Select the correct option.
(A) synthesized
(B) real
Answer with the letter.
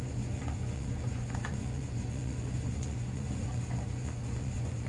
A